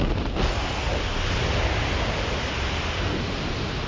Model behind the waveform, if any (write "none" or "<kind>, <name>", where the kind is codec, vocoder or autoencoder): none